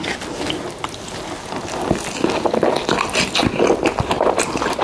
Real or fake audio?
real